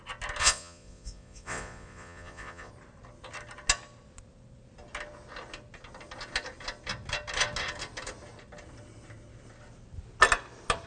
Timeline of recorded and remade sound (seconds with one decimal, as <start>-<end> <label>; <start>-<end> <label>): 0.0-0.4 recorded; 0.4-2.7 remade; 2.7-10.9 recorded